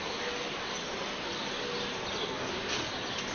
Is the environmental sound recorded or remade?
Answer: recorded